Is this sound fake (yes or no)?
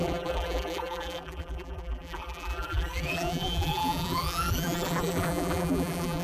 yes